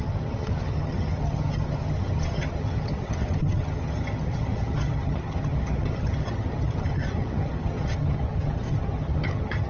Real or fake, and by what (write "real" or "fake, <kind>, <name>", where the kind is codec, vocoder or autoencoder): fake, vocoder, HiFi-GAN